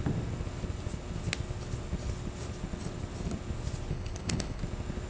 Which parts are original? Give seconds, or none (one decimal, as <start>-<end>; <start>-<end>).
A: 0.0-3.9; 4.6-5.1